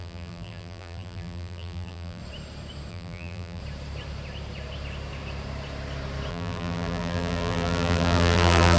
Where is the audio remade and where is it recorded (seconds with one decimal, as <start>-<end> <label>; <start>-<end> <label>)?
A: 0.0-2.2 remade; 2.2-2.9 recorded; 2.9-3.6 remade; 3.6-6.3 recorded; 6.3-8.8 remade